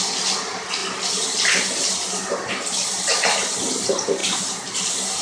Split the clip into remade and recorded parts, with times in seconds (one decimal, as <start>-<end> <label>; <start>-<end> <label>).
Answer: 0.0-5.2 recorded